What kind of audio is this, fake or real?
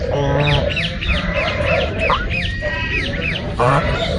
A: fake